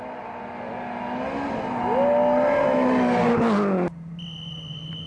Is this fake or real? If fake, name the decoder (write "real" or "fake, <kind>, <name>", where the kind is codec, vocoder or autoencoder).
real